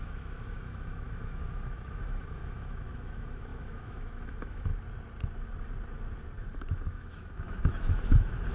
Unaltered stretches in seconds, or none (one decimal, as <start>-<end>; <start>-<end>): 4.7-6.7